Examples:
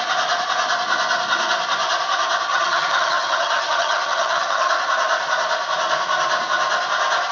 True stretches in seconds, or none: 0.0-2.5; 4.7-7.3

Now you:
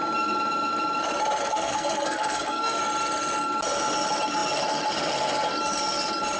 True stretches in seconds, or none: 0.0-1.4; 2.8-6.4